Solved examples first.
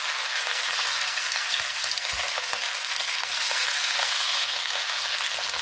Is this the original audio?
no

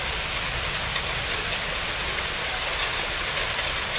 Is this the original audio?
yes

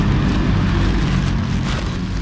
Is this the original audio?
yes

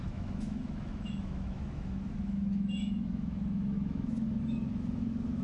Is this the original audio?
no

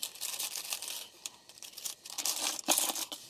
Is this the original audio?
yes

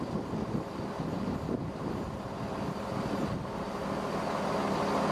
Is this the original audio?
yes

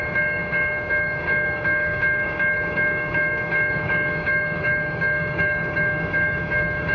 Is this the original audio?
no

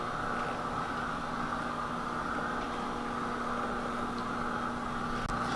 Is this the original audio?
yes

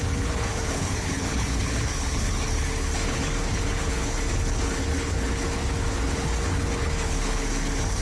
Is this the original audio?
no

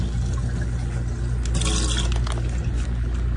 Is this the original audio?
yes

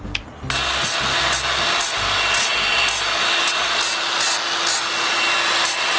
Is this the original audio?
yes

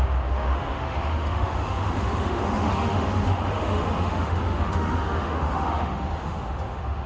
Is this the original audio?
no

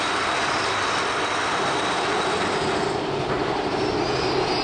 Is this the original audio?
yes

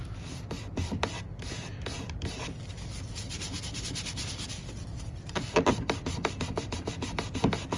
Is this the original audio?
no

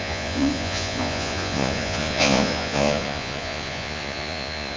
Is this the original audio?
no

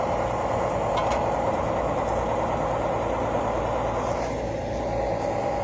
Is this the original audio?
yes